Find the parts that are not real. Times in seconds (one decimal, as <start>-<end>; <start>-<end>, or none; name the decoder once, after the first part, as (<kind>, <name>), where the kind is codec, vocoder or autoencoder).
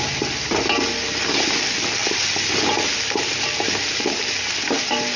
none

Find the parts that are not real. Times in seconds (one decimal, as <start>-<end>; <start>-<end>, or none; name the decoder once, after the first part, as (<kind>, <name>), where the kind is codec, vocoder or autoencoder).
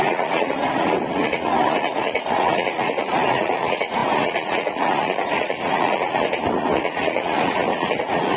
0.0-8.4 (vocoder, Vocos)